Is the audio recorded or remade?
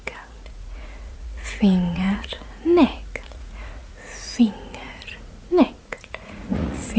remade